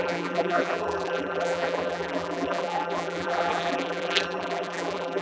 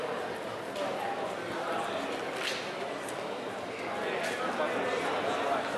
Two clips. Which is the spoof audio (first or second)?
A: first